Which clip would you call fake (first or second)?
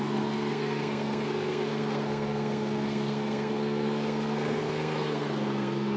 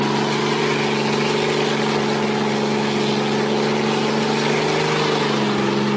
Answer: first